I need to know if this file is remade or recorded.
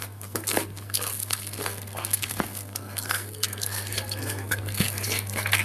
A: remade